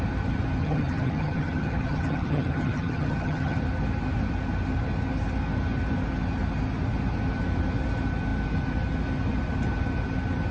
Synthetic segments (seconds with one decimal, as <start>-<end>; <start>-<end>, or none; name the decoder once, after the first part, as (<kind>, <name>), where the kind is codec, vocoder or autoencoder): 0.6-3.6 (vocoder, HiFi-GAN)